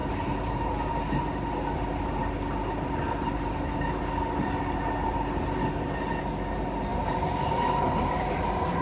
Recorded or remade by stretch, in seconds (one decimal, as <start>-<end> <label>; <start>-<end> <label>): 0.0-8.8 recorded